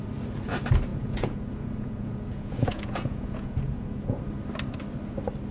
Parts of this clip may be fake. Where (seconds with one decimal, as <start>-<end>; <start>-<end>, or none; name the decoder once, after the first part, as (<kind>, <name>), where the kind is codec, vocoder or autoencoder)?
0.9-4.2 (vocoder, Vocos)